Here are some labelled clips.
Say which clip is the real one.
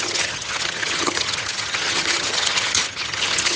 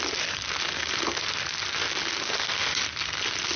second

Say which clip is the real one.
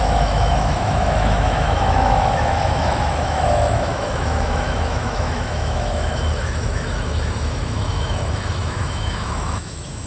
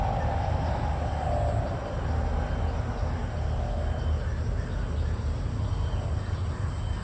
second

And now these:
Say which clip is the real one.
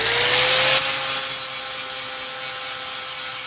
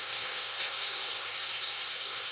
first